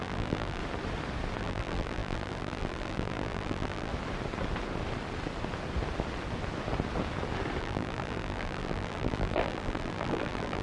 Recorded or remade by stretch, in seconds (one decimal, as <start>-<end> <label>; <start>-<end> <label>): 0.0-0.6 remade; 0.6-1.4 recorded; 1.4-3.9 remade; 3.9-7.6 recorded; 7.6-10.6 remade